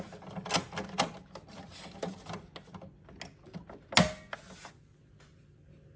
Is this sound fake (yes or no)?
no